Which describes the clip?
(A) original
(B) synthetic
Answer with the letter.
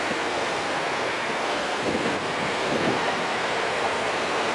B